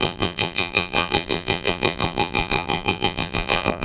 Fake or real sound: fake